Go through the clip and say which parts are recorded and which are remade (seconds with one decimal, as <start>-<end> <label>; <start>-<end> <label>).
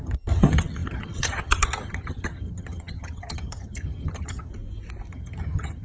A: 0.0-4.5 remade; 4.5-5.1 recorded; 5.1-5.8 remade